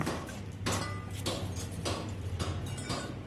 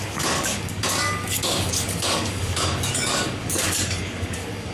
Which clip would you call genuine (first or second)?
first